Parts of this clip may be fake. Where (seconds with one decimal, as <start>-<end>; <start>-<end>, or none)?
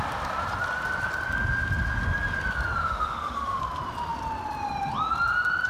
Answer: 2.8-3.6